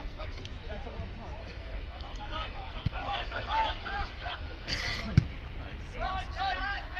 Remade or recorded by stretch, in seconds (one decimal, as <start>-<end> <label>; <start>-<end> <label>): 0.0-0.4 remade; 0.4-1.4 recorded; 1.4-4.7 remade; 4.7-6.4 recorded; 6.4-7.0 remade